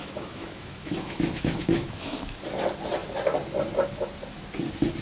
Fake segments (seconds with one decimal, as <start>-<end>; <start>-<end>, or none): 0.0-2.4